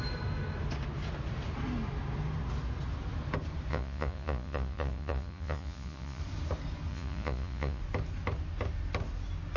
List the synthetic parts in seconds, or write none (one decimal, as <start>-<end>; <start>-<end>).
3.7-6.2; 6.9-7.8